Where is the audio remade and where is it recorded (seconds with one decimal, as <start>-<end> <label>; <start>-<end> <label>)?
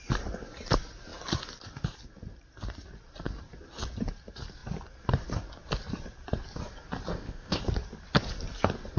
0.0-7.1 recorded; 7.1-7.6 remade; 7.6-9.0 recorded